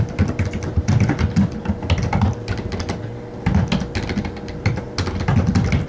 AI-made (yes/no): no